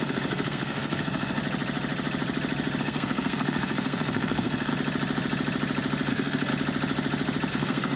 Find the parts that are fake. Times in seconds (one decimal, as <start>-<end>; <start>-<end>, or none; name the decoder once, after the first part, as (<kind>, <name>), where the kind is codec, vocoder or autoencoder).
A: 0.0-1.4 (codec, SNAC); 2.8-4.7; 6.1-6.5; 7.5-8.0